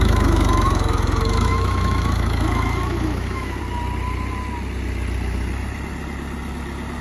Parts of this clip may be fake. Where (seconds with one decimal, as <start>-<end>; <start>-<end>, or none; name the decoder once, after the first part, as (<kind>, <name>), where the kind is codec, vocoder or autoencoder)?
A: 0.0-3.6 (autoencoder, DAC-VAE)